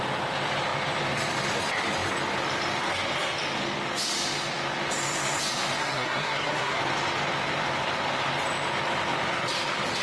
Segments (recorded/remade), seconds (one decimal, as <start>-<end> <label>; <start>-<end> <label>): 0.0-5.8 recorded; 5.8-6.8 remade; 6.8-10.0 recorded